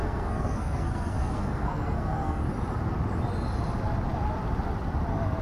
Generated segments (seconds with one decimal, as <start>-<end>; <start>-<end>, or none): 0.0-2.4